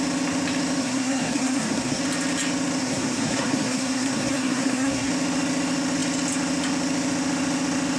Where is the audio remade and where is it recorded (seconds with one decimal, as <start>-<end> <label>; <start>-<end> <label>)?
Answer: 0.0-0.8 recorded; 0.8-2.0 remade; 2.0-2.8 recorded; 2.8-5.1 remade; 5.1-8.0 recorded